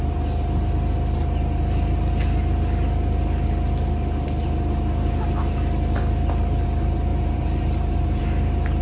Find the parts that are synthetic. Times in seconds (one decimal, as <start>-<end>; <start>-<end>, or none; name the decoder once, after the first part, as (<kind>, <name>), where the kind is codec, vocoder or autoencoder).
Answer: 7.1-8.2 (vocoder, BigVGAN v2)